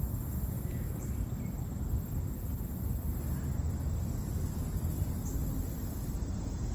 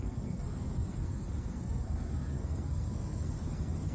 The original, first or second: first